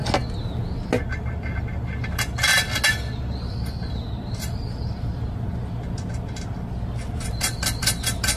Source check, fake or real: real